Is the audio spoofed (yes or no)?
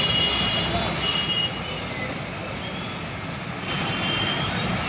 no